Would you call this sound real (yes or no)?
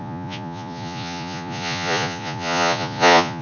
no